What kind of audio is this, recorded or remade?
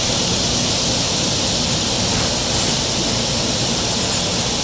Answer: recorded